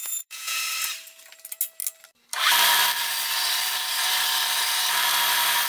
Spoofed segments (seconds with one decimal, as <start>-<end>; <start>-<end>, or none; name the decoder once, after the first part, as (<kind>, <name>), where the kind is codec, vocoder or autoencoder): 0.0-0.6 (vocoder, Vocos)

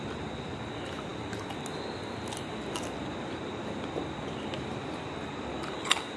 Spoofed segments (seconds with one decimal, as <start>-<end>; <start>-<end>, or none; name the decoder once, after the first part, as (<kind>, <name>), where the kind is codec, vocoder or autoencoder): none

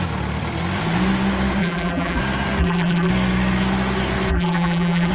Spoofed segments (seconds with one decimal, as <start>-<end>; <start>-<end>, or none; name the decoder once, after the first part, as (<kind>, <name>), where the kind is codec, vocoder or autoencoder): 1.6-2.2 (vocoder, BigVGAN v2); 2.6-3.1; 4.3-5.1

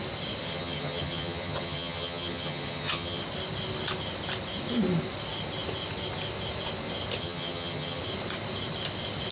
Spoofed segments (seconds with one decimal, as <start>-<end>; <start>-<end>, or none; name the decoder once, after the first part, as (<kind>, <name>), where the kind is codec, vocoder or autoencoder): 0.4-3.2 (vocoder, HiFi-GAN); 7.2-8.0

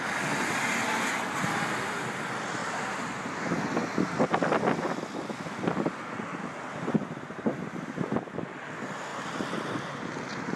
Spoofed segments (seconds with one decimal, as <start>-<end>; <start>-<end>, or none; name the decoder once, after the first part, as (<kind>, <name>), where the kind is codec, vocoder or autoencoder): none